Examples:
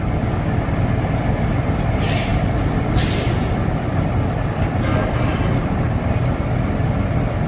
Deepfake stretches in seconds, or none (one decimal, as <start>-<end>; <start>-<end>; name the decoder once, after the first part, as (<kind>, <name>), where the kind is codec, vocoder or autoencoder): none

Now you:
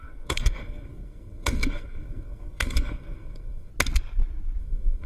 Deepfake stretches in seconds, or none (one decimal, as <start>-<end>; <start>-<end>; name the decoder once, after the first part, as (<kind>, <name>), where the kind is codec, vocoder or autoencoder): 0.0-3.7 (codec, SNAC); 4.6-5.1

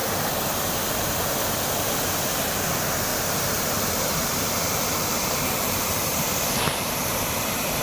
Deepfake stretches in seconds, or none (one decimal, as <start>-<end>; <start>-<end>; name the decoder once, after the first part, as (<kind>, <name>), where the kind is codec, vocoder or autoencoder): 3.1-7.8 (vocoder, BigVGAN v2)

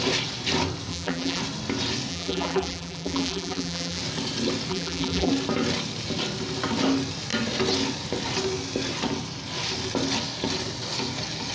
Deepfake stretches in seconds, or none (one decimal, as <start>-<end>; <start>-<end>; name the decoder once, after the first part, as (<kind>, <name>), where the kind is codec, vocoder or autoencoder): 0.9-1.4 (vocoder, BigVGAN v2); 2.1-4.0; 4.7-5.3

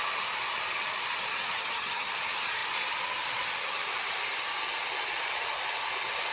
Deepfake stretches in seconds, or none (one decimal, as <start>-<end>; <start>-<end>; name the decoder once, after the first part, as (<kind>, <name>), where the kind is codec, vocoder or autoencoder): 1.3-2.1 (vocoder, HiFi-GAN)

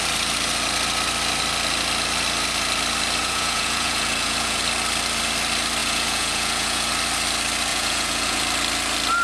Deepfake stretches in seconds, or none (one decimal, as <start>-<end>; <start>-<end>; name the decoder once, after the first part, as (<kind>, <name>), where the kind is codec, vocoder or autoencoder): 3.2-4.6 (vocoder, Vocos); 5.8-6.9; 7.7-8.4